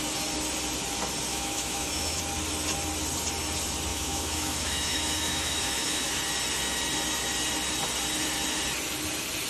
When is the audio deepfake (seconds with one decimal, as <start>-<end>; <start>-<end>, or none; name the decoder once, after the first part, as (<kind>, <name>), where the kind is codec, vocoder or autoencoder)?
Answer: 1.3-2.2 (autoencoder, DAC-VAE); 3.9-6.2

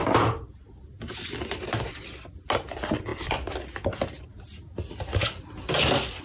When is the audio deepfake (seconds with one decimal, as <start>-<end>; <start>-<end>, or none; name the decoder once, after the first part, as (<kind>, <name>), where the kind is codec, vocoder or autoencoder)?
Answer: none

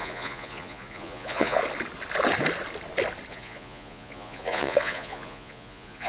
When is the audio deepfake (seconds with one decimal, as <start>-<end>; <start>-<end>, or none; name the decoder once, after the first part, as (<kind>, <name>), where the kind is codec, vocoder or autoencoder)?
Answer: 0.0-1.6 (vocoder, Vocos); 3.3-6.1

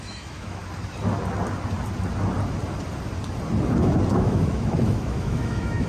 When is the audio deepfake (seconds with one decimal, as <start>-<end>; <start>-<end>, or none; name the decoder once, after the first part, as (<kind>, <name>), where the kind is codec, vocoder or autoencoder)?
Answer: 0.0-0.6 (autoencoder, DAC-VAE); 4.1-5.9

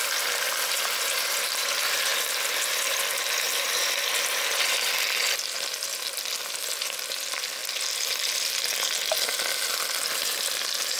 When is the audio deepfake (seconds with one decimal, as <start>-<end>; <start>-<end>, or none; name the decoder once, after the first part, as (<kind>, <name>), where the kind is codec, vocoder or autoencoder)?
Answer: none

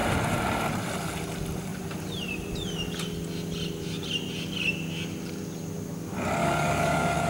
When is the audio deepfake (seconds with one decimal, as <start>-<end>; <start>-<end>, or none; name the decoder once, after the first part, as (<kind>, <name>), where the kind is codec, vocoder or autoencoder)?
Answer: 6.4-7.3 (codec, DAC)